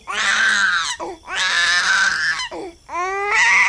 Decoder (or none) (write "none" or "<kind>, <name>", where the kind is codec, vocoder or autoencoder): none